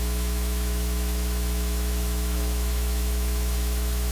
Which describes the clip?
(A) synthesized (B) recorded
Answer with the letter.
A